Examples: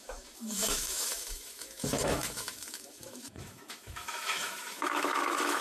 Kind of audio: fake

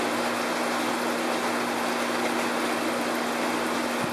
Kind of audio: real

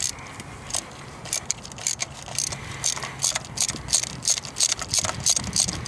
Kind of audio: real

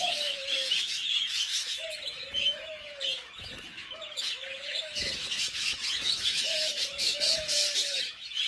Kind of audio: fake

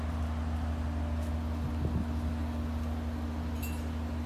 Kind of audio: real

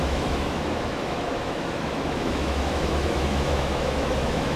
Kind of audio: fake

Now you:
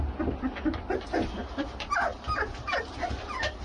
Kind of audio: real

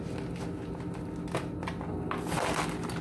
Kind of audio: real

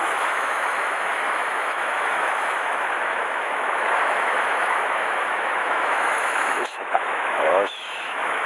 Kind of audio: fake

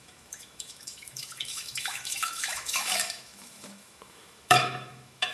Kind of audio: fake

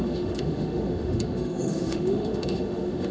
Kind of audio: fake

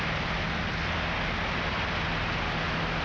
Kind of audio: real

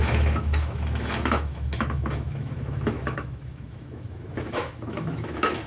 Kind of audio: fake